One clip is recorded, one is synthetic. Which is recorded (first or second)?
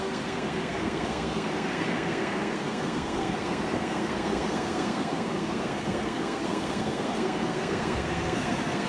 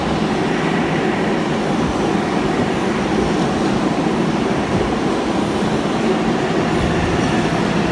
second